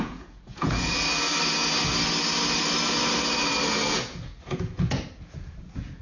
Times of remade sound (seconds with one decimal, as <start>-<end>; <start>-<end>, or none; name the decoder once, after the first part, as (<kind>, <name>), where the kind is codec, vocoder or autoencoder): 0.0-0.9 (vocoder, Vocos); 3.7-6.0